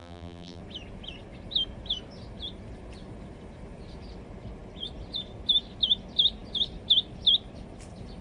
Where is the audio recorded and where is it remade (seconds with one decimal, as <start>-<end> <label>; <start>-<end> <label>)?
0.0-0.6 remade; 0.6-8.2 recorded